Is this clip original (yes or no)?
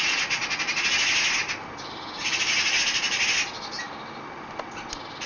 yes